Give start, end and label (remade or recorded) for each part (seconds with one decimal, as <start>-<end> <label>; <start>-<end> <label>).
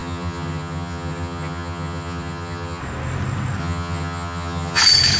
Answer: 0.0-2.8 remade; 2.8-3.6 recorded; 3.6-4.8 remade; 4.8-5.2 recorded